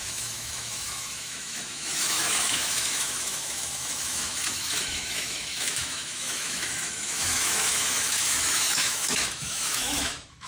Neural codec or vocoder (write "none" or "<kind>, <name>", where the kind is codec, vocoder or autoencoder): autoencoder, DAC-VAE